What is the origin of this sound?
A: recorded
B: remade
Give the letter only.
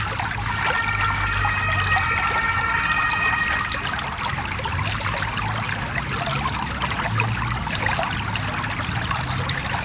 A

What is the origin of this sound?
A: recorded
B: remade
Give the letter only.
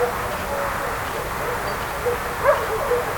A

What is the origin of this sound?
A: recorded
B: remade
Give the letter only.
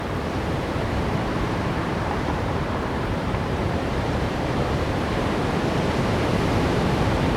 B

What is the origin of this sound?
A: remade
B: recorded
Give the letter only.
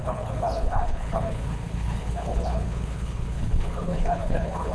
A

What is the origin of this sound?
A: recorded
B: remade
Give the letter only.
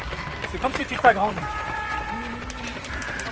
B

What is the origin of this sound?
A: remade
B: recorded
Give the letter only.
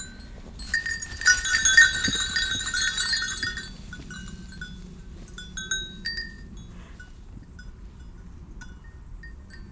B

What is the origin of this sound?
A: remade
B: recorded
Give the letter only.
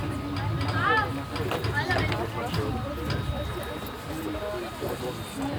B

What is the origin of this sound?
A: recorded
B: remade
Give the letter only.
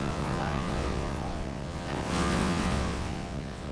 B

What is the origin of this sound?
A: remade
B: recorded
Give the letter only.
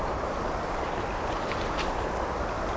B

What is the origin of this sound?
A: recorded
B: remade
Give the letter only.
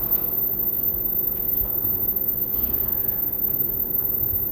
B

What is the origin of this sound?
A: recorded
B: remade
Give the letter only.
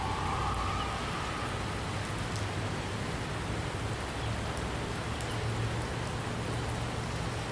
A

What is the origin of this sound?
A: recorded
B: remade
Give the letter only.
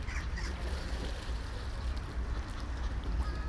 A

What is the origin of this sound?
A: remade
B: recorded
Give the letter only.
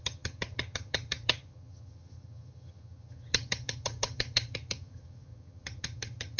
A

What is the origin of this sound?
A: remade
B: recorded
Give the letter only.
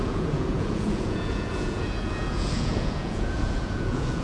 A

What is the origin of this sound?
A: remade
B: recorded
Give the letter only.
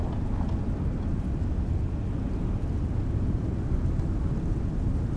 B